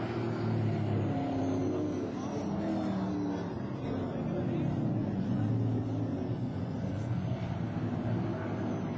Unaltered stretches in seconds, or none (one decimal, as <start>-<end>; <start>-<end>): 0.0-5.0; 5.5-6.1; 7.4-9.0